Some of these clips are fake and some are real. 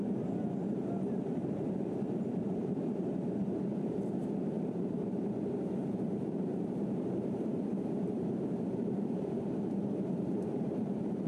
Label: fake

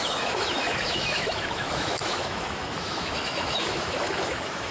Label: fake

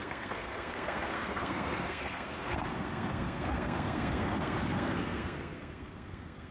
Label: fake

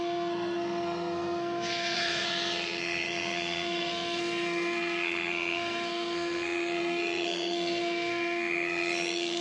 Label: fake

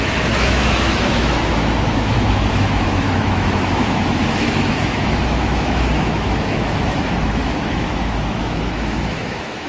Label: fake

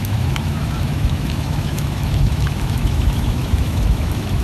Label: fake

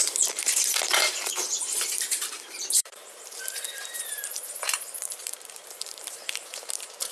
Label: fake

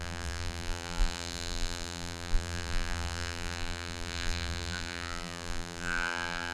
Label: fake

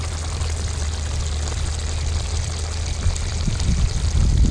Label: real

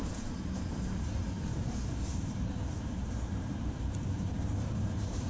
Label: fake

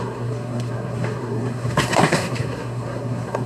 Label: fake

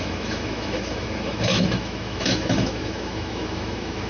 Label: fake